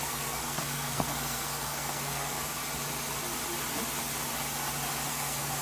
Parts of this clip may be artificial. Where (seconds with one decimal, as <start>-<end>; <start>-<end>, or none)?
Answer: 0.0-2.6; 5.1-5.6